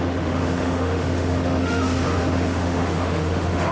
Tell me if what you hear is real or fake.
fake